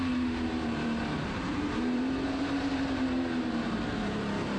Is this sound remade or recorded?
remade